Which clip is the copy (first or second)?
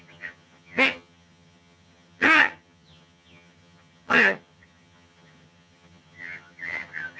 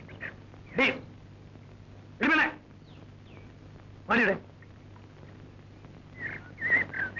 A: first